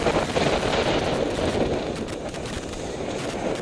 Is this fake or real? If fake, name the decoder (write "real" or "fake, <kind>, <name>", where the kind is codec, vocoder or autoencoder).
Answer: real